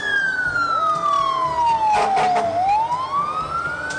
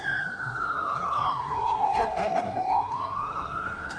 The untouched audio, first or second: first